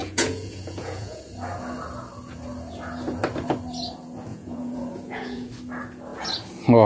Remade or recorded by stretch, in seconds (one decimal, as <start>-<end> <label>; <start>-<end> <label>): 0.0-1.2 remade; 1.2-4.3 recorded; 4.3-5.5 remade; 5.5-6.9 recorded